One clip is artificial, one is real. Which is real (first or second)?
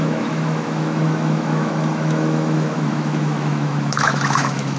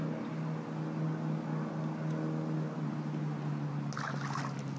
second